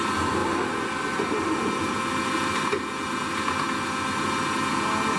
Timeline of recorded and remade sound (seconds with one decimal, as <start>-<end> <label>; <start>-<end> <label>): 0.0-5.2 recorded